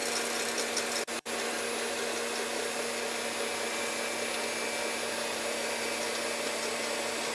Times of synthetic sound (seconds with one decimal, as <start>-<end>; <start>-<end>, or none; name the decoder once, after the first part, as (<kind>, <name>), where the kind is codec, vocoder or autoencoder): none